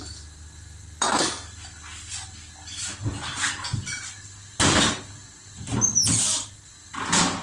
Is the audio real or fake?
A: real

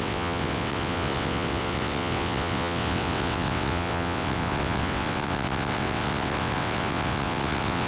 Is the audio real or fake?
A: fake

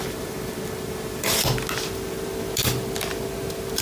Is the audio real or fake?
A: real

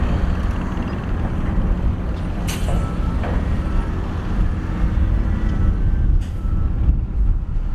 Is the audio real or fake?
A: real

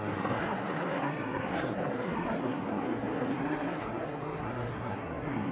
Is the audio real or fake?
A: fake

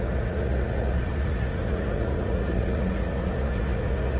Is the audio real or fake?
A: fake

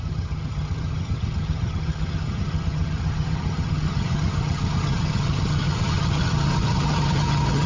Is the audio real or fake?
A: fake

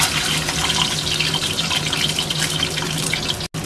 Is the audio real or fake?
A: real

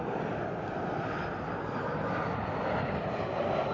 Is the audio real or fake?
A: real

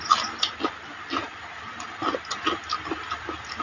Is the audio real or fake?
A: real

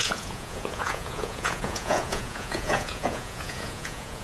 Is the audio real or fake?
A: fake